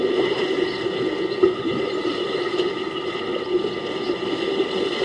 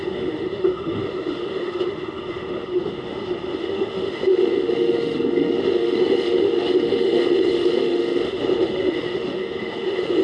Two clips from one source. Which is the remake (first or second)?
second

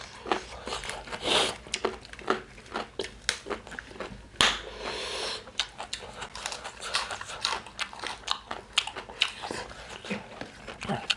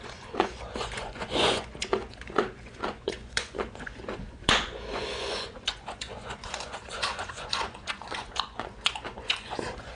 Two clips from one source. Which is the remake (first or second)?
second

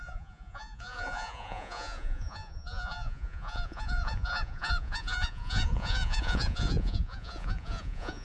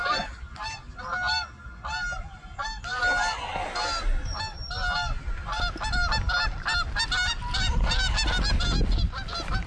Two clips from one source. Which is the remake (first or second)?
first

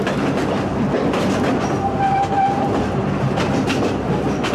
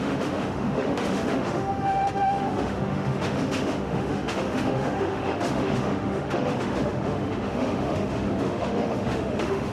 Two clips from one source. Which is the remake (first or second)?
second